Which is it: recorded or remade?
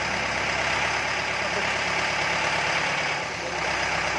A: recorded